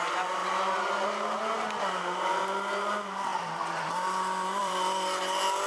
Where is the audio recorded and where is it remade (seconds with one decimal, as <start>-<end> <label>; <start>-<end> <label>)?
0.0-3.3 recorded; 3.3-3.9 remade; 3.9-4.6 recorded; 4.6-5.2 remade; 5.2-5.7 recorded